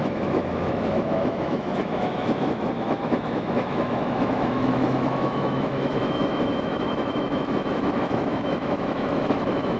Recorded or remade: remade